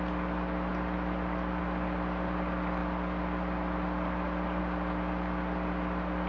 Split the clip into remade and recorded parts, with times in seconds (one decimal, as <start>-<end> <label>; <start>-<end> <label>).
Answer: 0.0-6.3 recorded